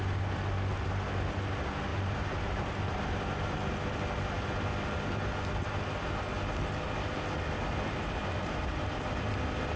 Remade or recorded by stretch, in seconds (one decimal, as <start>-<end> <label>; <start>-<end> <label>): 0.0-1.9 recorded; 1.9-2.6 remade; 2.6-8.2 recorded; 8.2-9.2 remade; 9.2-9.8 recorded